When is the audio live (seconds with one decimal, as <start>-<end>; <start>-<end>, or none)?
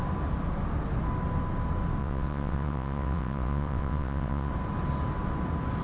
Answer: 0.0-2.0; 4.5-5.8